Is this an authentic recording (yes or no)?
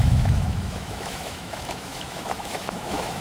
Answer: no